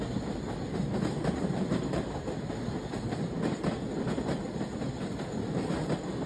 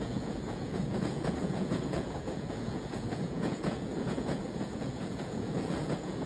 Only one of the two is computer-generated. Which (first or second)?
second